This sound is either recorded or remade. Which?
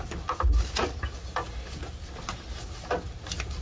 recorded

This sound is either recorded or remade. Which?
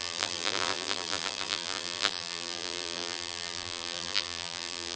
remade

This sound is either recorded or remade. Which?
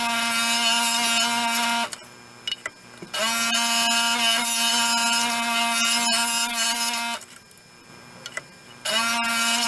recorded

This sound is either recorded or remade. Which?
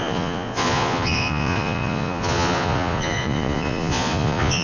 remade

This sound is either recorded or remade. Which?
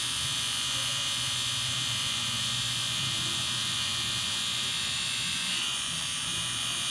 remade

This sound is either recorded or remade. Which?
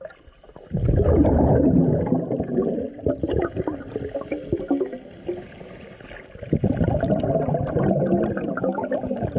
recorded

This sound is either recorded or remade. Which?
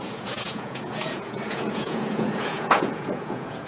remade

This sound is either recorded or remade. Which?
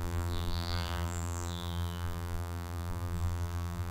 remade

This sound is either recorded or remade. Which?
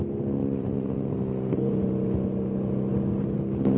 recorded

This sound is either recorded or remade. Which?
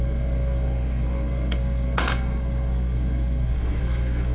remade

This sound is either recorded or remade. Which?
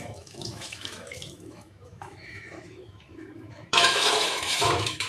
remade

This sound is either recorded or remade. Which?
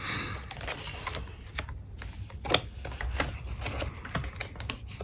recorded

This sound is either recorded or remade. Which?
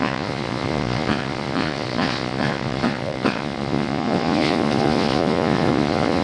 remade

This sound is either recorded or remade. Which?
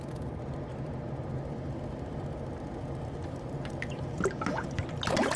recorded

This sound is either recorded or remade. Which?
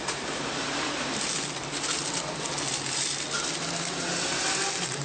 recorded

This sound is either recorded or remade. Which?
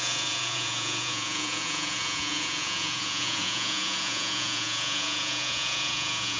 remade